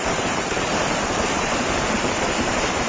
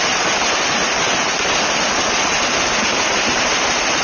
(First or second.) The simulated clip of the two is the first